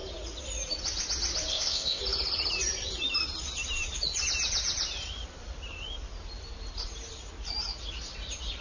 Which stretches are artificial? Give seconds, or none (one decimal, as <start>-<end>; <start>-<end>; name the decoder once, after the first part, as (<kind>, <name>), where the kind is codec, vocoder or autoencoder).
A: 1.5-2.0 (codec, ZipCodec)